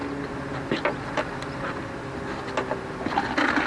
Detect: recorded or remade recorded